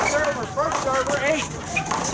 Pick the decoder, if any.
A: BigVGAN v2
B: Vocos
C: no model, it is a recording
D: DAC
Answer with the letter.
C